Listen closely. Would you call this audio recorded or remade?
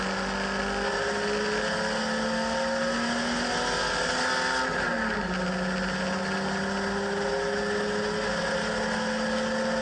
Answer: recorded